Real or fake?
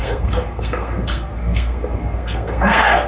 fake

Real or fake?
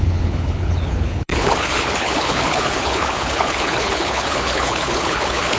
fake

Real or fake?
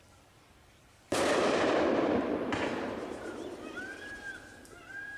fake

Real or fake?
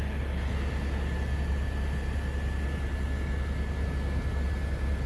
real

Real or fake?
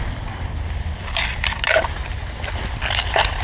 fake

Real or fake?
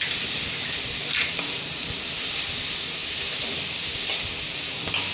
real